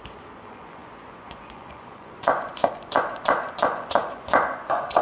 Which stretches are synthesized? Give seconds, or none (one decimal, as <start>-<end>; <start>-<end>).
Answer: 0.0-5.0